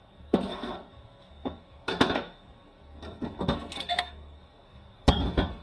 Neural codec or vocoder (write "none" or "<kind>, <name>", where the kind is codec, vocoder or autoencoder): codec, SNAC